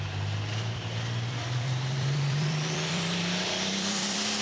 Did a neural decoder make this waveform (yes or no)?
yes